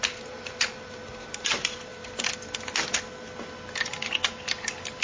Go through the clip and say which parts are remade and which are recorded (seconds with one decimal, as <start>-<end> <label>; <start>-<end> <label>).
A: 0.0-2.0 remade; 2.0-5.0 recorded